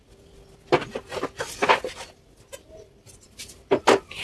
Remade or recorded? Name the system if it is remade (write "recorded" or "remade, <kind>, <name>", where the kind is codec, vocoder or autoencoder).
recorded